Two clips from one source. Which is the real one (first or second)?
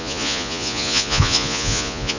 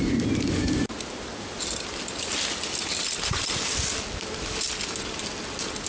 second